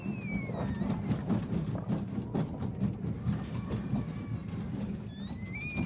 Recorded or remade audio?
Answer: recorded